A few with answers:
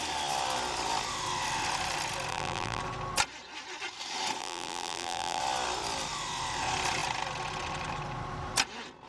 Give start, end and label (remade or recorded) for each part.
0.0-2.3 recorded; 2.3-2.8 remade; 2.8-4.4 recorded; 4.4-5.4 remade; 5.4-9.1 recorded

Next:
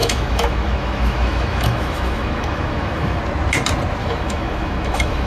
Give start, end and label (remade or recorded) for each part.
0.0-3.2 remade; 3.2-4.0 recorded; 4.0-5.3 remade